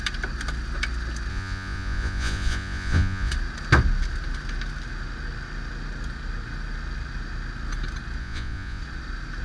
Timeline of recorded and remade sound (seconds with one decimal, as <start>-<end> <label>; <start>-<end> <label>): 0.0-1.3 recorded; 1.3-3.3 remade; 3.3-8.2 recorded; 8.2-8.8 remade; 8.8-9.4 recorded